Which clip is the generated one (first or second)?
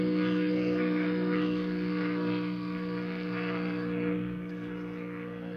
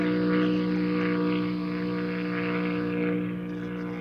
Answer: first